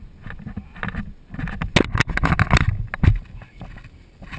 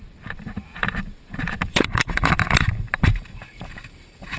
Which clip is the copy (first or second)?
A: second